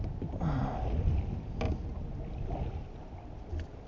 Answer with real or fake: real